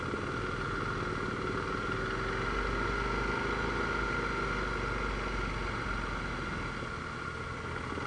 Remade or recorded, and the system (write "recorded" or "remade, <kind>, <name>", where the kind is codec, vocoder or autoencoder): recorded